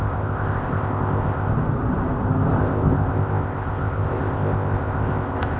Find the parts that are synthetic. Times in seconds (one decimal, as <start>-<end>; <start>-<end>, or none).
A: 0.0-1.5; 2.6-5.6